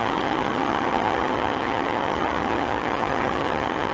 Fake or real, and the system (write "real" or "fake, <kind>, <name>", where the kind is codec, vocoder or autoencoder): fake, vocoder, HiFi-GAN